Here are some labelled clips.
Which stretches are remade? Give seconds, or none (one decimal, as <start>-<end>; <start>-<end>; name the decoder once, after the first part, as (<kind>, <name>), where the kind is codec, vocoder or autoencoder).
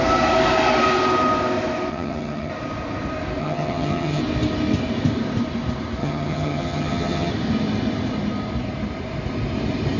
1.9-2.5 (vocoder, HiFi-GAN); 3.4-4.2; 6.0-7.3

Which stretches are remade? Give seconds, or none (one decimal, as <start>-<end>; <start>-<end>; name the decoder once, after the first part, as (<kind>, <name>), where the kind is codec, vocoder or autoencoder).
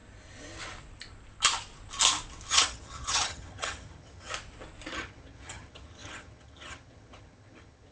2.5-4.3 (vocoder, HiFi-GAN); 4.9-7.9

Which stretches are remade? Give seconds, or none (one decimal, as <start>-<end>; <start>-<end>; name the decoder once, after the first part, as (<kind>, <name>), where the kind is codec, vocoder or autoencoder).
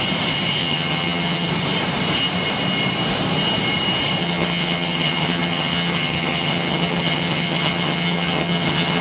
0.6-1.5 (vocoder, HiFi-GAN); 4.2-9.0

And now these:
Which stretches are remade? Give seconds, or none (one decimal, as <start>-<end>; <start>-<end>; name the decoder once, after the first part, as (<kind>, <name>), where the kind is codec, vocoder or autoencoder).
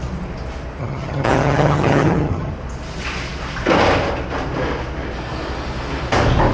0.8-2.5 (vocoder, HiFi-GAN)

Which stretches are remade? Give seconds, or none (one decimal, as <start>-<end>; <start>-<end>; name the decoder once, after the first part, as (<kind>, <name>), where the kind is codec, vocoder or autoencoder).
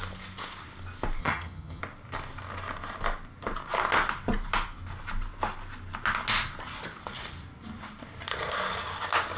1.2-1.8 (vocoder, HiFi-GAN)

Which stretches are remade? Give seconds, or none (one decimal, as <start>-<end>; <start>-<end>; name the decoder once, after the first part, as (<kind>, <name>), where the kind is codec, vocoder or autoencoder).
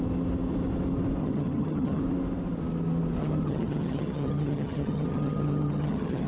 1.2-2.0 (vocoder, HiFi-GAN); 3.2-6.3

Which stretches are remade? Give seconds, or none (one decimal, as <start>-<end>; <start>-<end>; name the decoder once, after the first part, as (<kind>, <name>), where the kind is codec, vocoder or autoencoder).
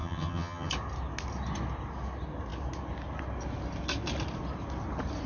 0.0-0.7 (vocoder, HiFi-GAN)